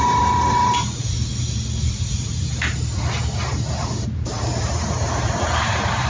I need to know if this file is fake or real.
fake